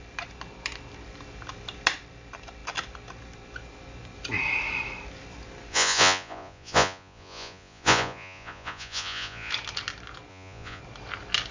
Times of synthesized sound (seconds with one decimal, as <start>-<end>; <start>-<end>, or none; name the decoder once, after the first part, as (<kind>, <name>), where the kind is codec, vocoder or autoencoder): 5.7-9.5 (vocoder, Vocos); 10.3-10.8